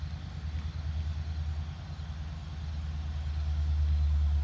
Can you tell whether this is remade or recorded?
recorded